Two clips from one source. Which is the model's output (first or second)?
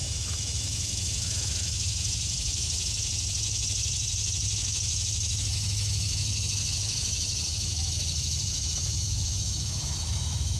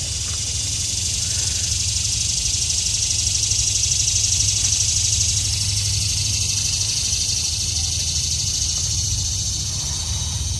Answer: first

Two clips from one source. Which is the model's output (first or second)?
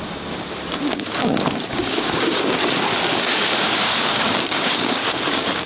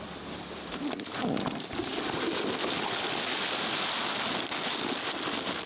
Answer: first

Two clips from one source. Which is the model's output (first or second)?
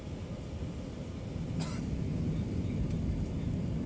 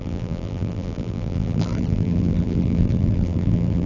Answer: second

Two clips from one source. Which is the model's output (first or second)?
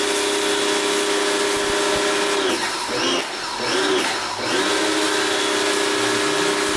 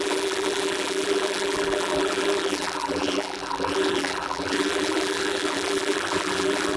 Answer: second